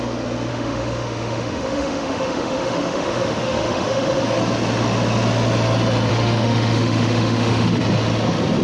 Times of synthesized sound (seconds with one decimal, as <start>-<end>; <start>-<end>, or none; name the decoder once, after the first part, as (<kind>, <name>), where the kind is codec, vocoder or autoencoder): 0.5-4.2 (autoencoder, DAC-VAE); 6.1-7.8